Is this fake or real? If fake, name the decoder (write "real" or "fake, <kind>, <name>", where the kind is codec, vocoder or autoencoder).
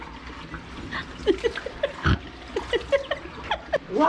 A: real